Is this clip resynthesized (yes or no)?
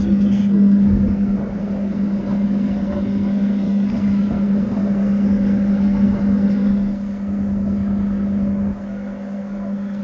yes